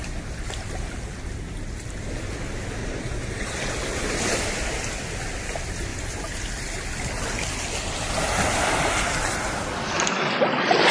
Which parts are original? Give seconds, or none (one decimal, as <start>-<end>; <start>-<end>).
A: 0.0-2.8; 3.7-10.9